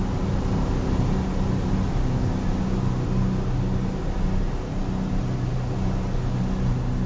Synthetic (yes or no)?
no